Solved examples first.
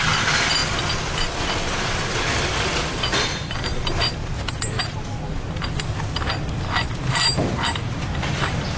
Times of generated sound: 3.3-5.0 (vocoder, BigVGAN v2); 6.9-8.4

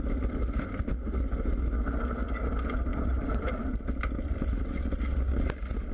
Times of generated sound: 2.9-3.6 (vocoder, BigVGAN v2)

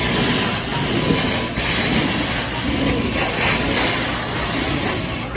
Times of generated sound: 0.7-3.9 (vocoder, BigVGAN v2)

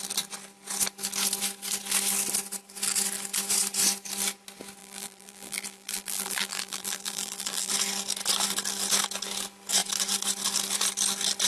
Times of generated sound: 4.8-7.7 (vocoder, BigVGAN v2)

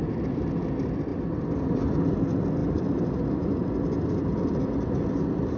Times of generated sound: 1.1-2.1 (vocoder, BigVGAN v2); 2.6-4.7

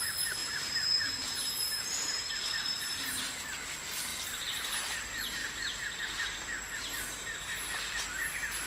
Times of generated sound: 0.4-2.3 (vocoder, BigVGAN v2); 4.1-4.8